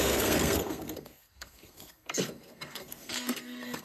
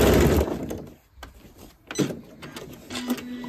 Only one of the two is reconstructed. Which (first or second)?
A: first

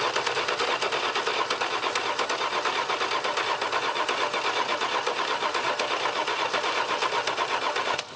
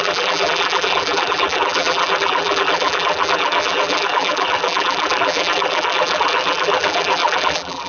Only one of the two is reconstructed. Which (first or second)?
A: second